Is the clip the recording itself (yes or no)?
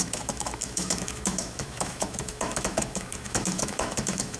no